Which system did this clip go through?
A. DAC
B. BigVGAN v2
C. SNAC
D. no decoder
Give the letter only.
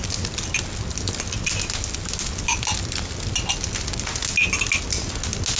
D